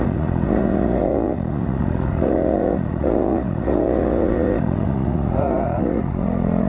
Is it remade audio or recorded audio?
remade